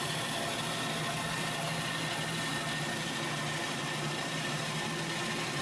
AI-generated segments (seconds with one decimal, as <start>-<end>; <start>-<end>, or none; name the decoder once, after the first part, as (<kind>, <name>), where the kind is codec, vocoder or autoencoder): 3.6-5.6 (vocoder, BigVGAN v2)